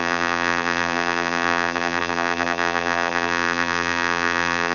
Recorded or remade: remade